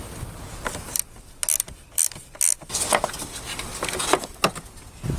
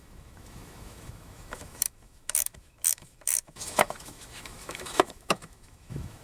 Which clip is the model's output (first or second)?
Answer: second